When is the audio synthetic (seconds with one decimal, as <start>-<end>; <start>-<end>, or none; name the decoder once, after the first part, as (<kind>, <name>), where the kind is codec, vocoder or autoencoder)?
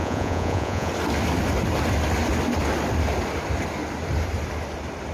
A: 0.0-0.9 (vocoder, Vocos)